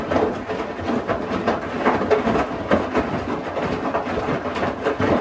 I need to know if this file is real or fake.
real